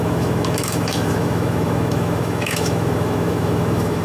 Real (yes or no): no